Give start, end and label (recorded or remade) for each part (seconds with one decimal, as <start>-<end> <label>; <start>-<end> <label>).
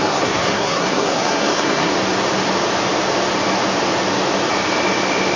0.0-1.9 remade; 1.9-5.4 recorded